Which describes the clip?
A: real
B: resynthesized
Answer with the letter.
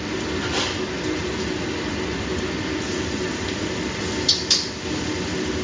A